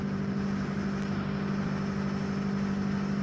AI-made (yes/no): no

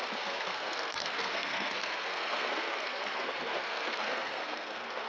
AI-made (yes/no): yes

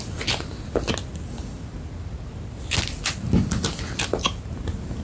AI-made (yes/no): no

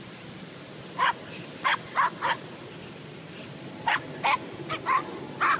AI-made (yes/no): no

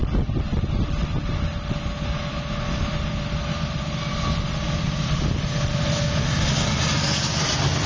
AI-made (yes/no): no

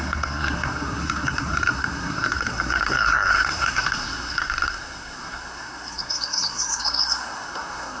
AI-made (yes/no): yes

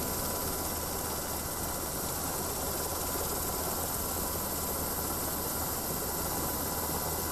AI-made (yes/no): no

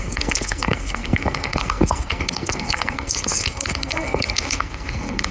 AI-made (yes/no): yes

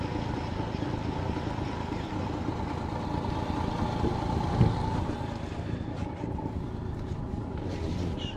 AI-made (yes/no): no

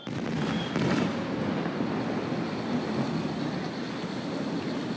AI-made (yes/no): no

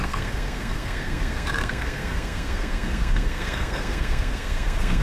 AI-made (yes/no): yes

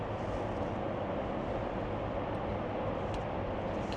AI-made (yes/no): no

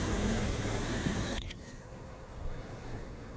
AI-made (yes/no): yes